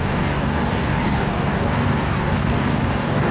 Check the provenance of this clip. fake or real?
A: fake